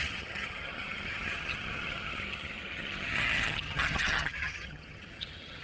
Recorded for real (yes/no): no